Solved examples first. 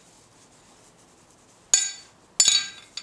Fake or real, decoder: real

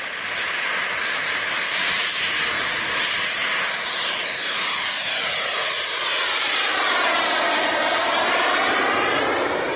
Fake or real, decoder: fake, vocoder, BigVGAN v2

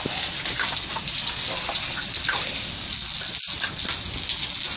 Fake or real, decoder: real